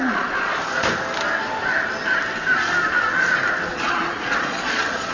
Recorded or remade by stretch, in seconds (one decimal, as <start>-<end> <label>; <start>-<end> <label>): 0.0-0.6 remade; 0.6-3.7 recorded; 3.7-5.1 remade